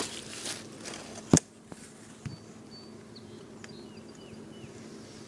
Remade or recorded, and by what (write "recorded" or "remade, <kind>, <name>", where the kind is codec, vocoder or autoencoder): recorded